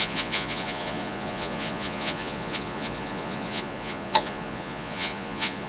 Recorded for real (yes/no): no